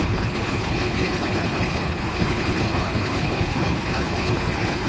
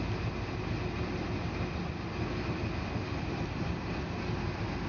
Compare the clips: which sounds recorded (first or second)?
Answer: second